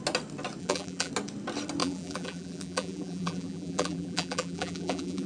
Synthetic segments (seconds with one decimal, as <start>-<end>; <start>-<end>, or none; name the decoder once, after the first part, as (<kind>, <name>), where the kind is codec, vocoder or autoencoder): 0.6-1.1 (vocoder, BigVGAN v2); 1.8-5.3